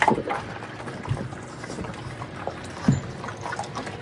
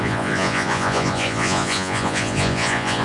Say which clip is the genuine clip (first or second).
first